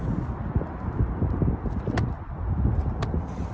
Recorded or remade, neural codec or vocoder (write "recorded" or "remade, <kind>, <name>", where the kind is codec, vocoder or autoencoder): recorded